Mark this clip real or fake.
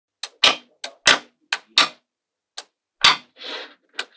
real